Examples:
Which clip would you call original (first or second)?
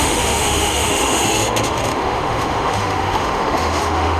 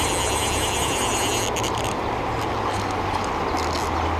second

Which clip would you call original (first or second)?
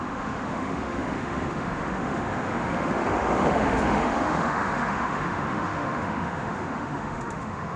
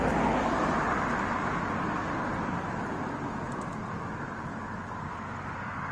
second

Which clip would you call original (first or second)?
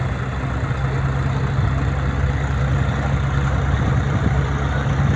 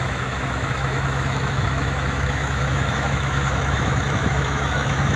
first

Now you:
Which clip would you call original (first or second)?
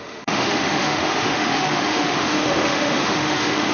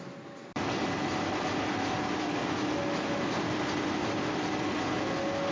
second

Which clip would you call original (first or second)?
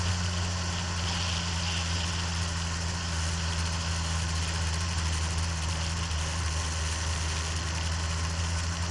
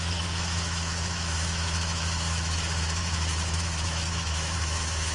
first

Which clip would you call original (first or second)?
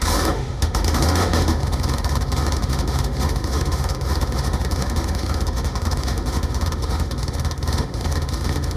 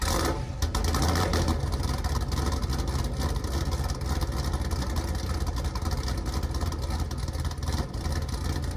second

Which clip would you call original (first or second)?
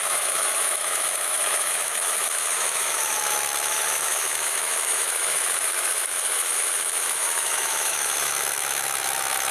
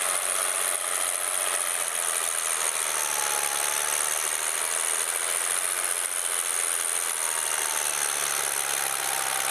second